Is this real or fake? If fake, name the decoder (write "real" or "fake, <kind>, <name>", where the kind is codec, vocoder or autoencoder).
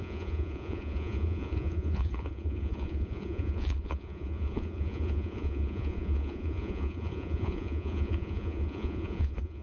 fake, vocoder, Vocos